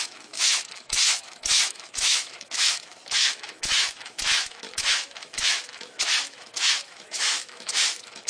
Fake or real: fake